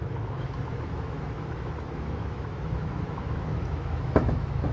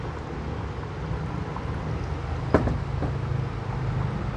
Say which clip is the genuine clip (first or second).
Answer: second